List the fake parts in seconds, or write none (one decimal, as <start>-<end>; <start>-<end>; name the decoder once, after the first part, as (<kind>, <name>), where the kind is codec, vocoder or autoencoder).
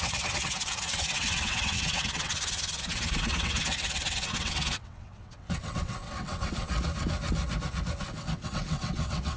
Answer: 0.0-6.7 (vocoder, WaveNeXt); 8.0-9.4